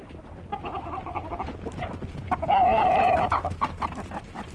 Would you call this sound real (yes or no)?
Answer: no